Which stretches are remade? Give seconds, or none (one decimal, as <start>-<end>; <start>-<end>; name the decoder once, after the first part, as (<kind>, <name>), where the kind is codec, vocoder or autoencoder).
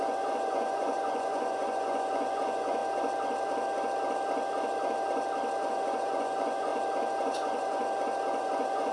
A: 0.0-2.8 (vocoder, Vocos); 5.7-6.7; 7.2-7.8; 8.4-8.9